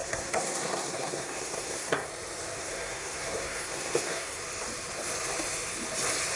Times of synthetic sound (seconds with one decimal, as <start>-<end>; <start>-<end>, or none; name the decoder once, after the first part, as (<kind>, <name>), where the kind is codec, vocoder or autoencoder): 0.0-2.1 (codec, SNAC); 2.6-4.4